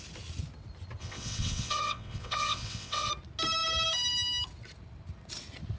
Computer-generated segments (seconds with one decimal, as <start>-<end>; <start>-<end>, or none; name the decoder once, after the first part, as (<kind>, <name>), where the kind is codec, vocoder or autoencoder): 1.0-3.1 (vocoder, WaveNeXt)